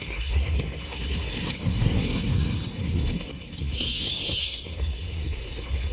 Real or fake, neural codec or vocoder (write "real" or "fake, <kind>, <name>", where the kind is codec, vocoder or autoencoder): fake, codec, SNAC